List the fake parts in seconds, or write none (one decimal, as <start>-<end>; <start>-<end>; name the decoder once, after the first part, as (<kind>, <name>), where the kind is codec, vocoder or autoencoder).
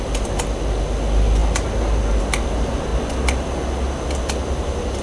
none